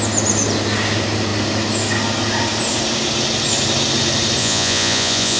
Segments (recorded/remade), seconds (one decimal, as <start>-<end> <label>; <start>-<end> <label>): 0.0-4.4 recorded; 4.4-5.4 remade